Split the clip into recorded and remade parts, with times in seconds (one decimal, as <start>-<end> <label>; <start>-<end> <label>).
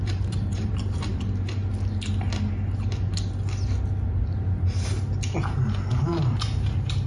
0.0-1.6 remade; 1.6-5.9 recorded; 5.9-7.1 remade